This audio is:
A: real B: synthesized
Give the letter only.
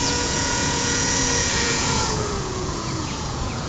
B